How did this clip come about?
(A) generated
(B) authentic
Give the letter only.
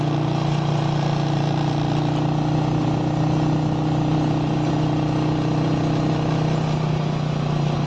B